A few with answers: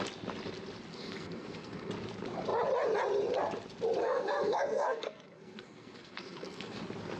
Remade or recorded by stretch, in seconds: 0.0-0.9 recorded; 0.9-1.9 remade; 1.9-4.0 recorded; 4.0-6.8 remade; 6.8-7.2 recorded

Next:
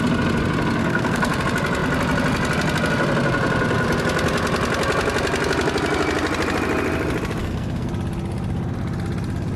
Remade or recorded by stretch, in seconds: 0.0-0.8 recorded; 0.8-1.4 remade; 1.4-7.4 recorded; 7.4-7.9 remade; 7.9-9.6 recorded

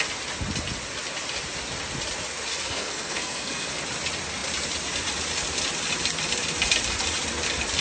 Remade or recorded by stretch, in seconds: 0.0-2.5 recorded; 2.5-3.7 remade; 3.7-7.8 recorded

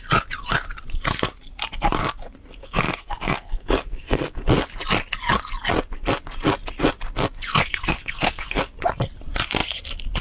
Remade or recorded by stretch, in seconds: 0.0-2.6 recorded; 2.6-4.4 remade; 4.4-7.5 recorded; 7.5-8.6 remade; 8.6-10.2 recorded

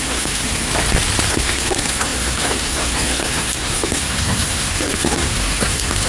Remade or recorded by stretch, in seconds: 0.0-0.7 remade; 0.7-1.3 recorded; 1.3-6.1 remade